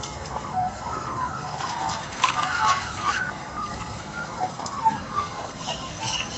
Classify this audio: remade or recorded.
remade